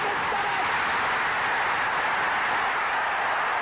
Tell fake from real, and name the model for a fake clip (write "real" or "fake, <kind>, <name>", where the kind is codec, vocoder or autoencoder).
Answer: real